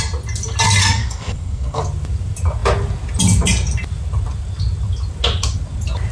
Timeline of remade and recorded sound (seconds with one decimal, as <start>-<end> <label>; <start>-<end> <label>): 0.0-0.8 recorded; 0.8-1.8 remade; 1.8-6.1 recorded